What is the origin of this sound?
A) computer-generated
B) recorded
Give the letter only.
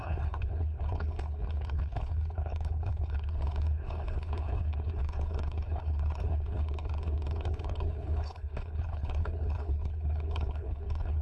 A